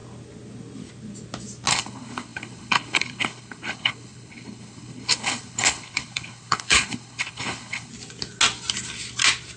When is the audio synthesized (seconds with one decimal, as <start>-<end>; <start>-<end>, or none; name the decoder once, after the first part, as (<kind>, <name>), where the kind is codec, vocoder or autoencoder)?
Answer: 1.7-7.9 (codec, HILCodec)